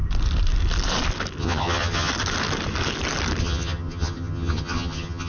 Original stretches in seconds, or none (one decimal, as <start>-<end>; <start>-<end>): 0.0-1.4; 2.1-3.4